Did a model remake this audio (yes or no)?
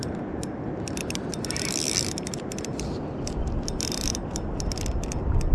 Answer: no